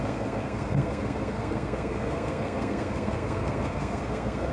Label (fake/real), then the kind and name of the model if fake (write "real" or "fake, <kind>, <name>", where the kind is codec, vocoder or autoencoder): fake, codec, SNAC